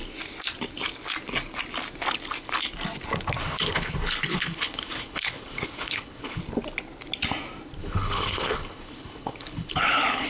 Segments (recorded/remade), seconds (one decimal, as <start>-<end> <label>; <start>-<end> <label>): 0.0-3.4 recorded; 3.4-6.4 remade; 6.4-7.8 recorded; 7.8-10.3 remade